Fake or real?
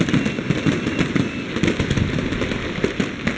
real